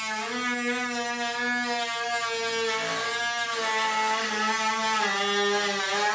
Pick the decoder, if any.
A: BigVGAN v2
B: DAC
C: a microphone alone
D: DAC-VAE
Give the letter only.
C